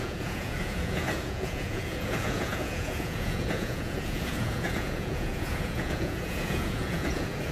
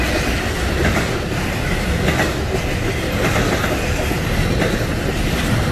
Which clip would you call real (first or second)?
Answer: second